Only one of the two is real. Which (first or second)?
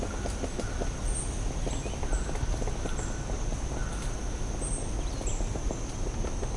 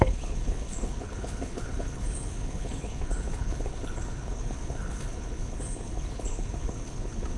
first